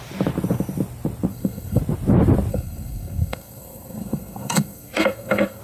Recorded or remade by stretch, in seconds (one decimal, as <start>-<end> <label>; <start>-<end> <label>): 0.0-1.3 recorded; 1.3-1.8 remade; 1.8-2.5 recorded; 2.5-5.6 remade